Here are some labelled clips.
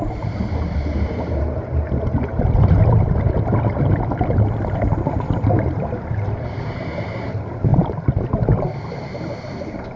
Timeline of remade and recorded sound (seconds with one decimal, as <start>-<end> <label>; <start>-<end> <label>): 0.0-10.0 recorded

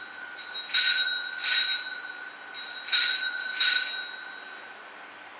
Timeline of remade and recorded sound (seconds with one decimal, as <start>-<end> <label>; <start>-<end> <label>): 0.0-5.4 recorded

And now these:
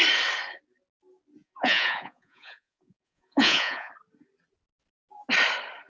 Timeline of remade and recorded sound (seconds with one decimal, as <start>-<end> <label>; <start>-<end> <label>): 0.0-1.4 recorded; 1.4-3.9 remade; 3.9-5.9 recorded

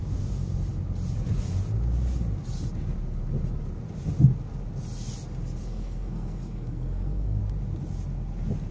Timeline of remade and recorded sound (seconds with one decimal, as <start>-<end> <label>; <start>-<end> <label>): 0.0-5.6 recorded; 5.6-7.4 remade; 7.4-8.7 recorded